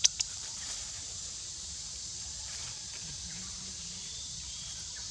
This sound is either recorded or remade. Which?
remade